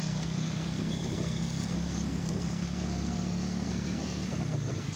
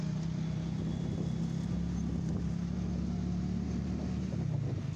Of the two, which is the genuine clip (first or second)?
second